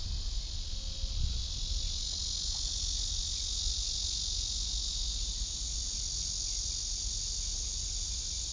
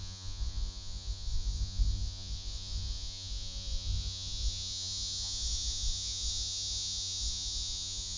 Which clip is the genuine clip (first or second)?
first